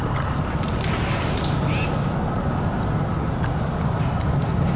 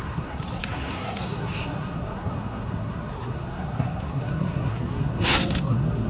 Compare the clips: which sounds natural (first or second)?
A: first